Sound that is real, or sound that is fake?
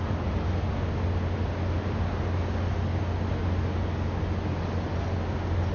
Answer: real